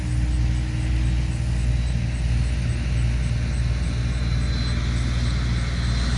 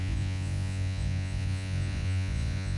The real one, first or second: first